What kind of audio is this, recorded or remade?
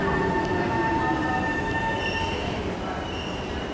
recorded